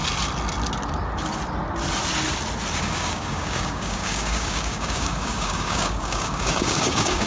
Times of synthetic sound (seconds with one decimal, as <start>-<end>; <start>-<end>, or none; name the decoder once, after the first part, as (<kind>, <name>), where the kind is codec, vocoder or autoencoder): 2.8-7.3 (codec, DAC)